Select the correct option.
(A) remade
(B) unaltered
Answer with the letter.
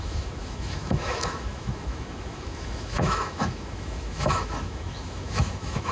A